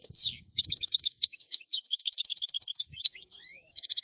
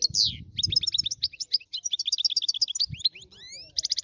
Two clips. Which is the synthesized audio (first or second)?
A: first